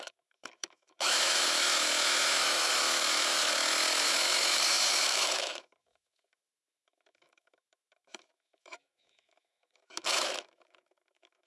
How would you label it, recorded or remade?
remade